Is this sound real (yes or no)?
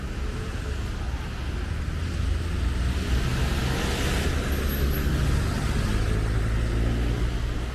yes